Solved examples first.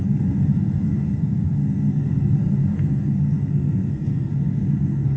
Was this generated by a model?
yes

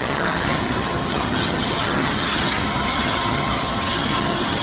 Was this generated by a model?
yes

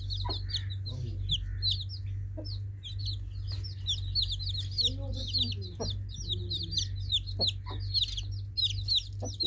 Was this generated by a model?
no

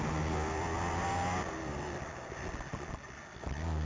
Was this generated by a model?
no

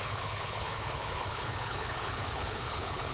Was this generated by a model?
yes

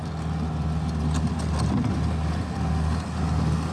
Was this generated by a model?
no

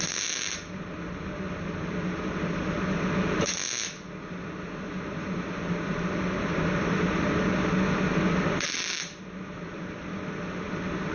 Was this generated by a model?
no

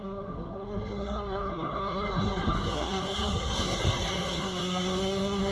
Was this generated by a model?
yes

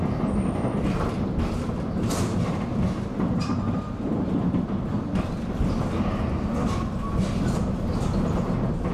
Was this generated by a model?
no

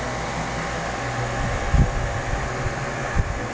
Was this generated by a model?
no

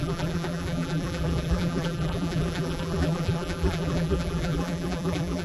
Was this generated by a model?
yes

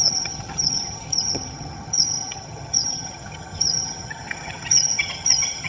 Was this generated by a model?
yes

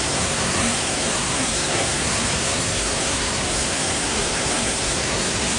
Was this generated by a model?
yes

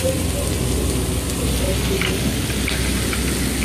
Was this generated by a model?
no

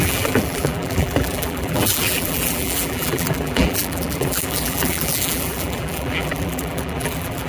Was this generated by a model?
yes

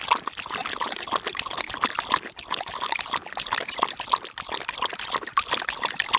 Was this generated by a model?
no